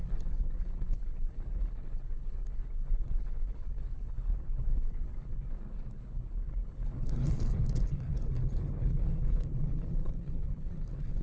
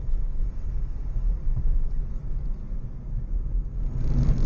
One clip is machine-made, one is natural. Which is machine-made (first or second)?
first